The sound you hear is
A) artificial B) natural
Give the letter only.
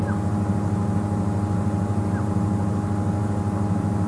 B